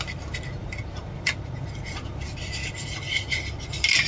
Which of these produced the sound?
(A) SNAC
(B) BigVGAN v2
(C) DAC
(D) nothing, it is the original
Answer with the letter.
B